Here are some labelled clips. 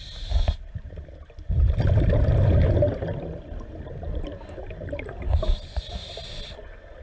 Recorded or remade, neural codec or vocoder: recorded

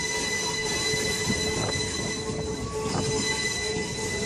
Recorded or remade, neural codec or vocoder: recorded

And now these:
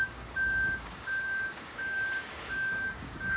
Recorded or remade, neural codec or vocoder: remade, codec, DAC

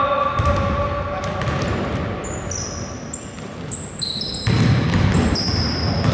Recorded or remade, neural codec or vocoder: recorded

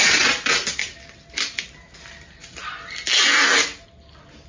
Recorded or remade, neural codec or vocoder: recorded